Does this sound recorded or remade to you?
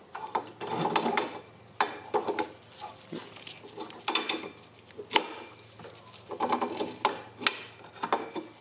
recorded